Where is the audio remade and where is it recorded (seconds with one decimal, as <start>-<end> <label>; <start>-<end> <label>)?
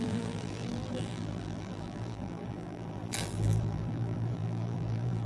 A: 0.0-5.3 remade